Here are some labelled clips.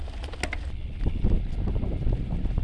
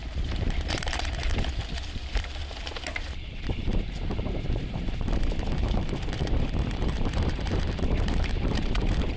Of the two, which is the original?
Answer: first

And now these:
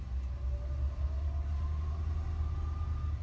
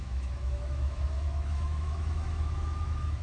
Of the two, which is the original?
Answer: first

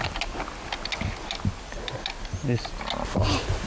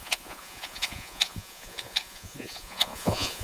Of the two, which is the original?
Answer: first